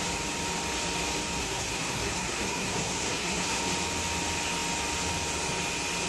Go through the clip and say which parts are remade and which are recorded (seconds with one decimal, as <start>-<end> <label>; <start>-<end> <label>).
0.0-1.4 recorded; 1.4-3.6 remade; 3.6-6.1 recorded